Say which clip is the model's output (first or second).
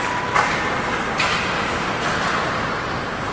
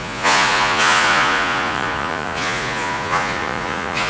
second